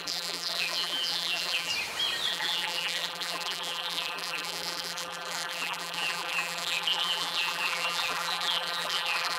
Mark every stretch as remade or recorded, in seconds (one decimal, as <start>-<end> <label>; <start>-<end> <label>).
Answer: 0.0-1.7 remade; 1.7-2.3 recorded; 2.3-9.4 remade

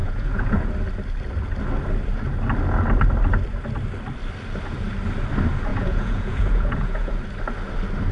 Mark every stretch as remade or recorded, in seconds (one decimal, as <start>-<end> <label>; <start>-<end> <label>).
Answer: 0.0-0.7 remade; 0.7-5.7 recorded; 5.7-7.1 remade; 7.1-8.1 recorded

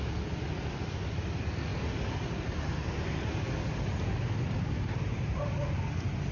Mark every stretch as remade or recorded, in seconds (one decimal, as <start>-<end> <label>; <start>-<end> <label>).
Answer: 0.0-6.3 recorded

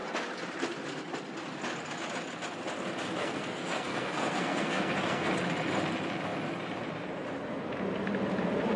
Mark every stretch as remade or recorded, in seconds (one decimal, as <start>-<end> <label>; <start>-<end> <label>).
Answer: 0.0-3.2 recorded; 3.2-5.3 remade; 5.3-8.8 recorded